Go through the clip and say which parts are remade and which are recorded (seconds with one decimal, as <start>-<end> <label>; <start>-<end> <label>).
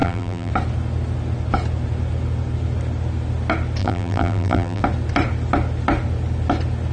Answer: 0.0-0.5 remade; 0.5-3.8 recorded; 3.8-4.8 remade; 4.8-6.9 recorded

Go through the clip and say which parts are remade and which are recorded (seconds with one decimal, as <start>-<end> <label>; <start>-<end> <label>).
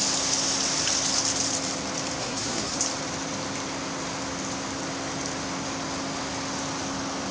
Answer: 0.0-2.2 recorded; 2.2-2.8 remade; 2.8-7.3 recorded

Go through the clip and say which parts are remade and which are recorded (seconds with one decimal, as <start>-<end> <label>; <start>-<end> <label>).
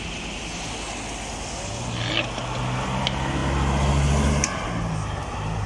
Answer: 0.0-5.7 recorded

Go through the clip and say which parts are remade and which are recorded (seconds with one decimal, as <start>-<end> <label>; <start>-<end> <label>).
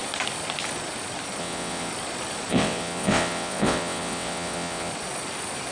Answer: 0.0-1.4 recorded; 1.4-1.9 remade; 1.9-2.5 recorded; 2.5-4.9 remade; 4.9-5.7 recorded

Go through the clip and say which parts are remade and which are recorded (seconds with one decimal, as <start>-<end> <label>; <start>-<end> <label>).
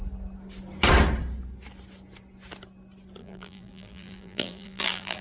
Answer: 0.0-3.2 recorded; 3.2-5.2 remade